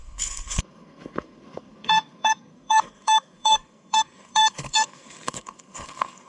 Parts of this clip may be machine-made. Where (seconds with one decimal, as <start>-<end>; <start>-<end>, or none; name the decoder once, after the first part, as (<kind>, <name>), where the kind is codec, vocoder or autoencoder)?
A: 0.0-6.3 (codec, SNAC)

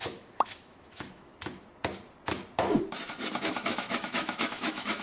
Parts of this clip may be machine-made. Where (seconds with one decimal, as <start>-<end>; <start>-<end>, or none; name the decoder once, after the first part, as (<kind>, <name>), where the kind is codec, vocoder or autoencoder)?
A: 0.0-1.3 (autoencoder, DAC-VAE); 3.4-5.0

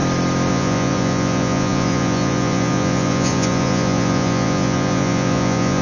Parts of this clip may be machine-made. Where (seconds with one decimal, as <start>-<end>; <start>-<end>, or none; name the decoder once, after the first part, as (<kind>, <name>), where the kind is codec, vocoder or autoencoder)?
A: 0.5-5.8 (vocoder, Vocos)

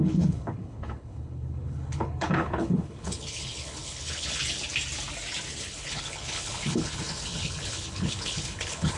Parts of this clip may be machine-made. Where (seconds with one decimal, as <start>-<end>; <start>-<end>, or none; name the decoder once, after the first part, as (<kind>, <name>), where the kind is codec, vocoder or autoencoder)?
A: 0.0-4.4 (codec, HILCodec); 5.6-9.0

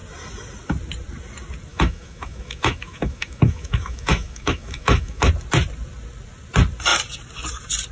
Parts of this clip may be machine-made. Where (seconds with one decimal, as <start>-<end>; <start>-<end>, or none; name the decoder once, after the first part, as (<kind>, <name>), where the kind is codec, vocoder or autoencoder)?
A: 1.7-5.3 (autoencoder, DAC-VAE)